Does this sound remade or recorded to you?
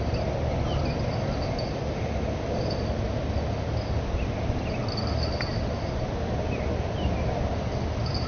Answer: recorded